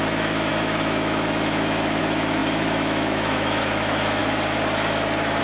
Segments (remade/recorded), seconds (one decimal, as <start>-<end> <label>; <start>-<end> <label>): 0.0-4.2 remade; 4.2-5.4 recorded